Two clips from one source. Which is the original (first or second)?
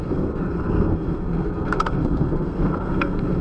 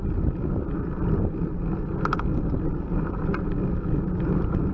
second